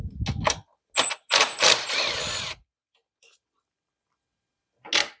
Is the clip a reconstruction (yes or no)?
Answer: no